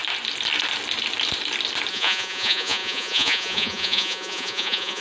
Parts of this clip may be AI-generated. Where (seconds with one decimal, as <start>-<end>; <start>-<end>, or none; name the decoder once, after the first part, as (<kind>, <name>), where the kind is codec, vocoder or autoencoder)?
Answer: 1.9-5.0 (vocoder, Vocos)